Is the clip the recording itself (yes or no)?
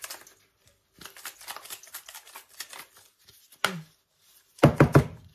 yes